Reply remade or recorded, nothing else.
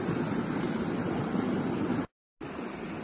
recorded